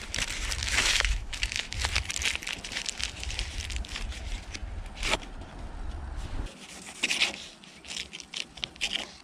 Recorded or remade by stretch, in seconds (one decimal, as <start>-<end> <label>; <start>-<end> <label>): 0.0-0.6 recorded; 0.6-1.7 remade; 1.7-9.2 recorded